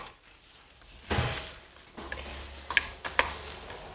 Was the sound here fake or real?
real